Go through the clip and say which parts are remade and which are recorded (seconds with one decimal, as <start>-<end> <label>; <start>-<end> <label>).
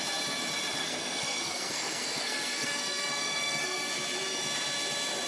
0.0-0.8 recorded; 0.8-3.9 remade; 3.9-5.3 recorded